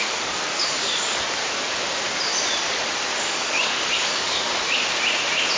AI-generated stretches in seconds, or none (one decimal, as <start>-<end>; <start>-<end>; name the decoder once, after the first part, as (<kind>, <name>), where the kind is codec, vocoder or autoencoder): 0.0-1.4 (codec, DAC); 3.2-4.5